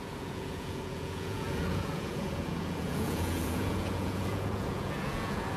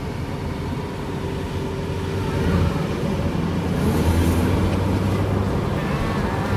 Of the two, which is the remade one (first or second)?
first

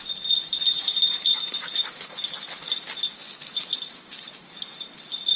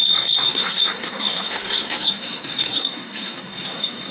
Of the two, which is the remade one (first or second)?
second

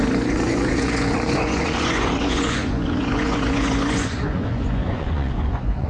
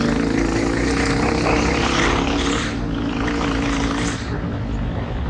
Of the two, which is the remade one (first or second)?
first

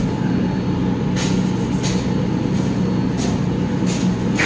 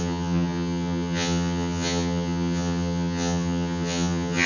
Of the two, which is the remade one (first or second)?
second